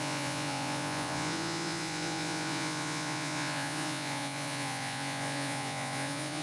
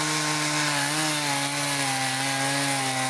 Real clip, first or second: second